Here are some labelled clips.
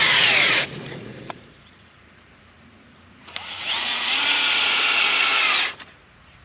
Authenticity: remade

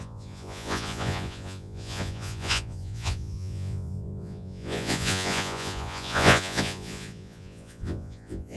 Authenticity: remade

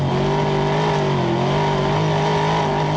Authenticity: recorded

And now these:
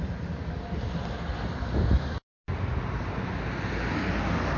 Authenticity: recorded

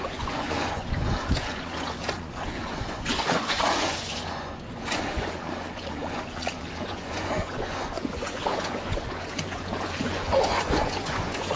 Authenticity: remade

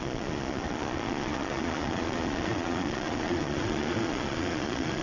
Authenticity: remade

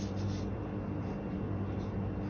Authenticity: recorded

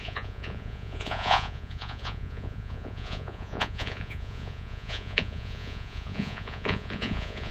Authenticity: remade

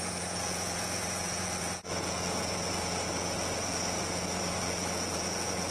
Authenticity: remade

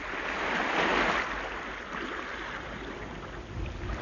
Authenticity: recorded